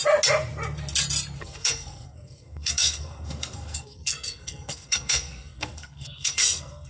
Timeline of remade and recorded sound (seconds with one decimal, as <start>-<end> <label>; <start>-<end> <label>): 0.0-1.4 recorded; 1.4-6.9 remade